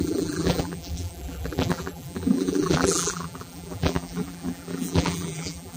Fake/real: fake